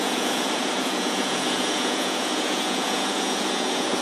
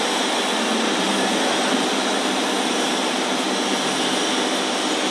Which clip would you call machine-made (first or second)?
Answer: first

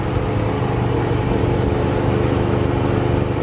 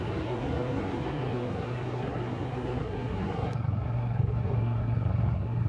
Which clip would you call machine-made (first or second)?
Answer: second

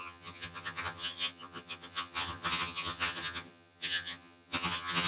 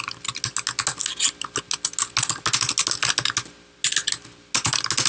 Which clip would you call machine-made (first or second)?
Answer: first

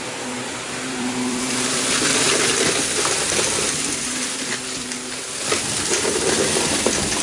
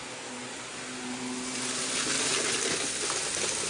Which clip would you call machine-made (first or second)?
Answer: first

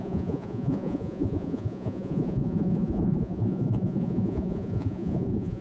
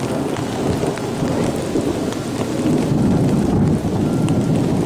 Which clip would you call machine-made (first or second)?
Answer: first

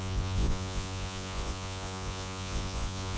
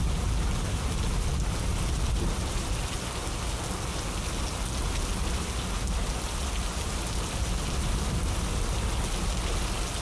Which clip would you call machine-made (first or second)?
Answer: first